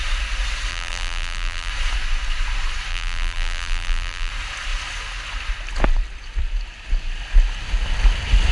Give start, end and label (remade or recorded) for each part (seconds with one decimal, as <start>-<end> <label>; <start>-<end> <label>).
0.0-0.7 recorded; 0.7-1.7 remade; 1.7-2.9 recorded; 2.9-4.3 remade; 4.3-8.5 recorded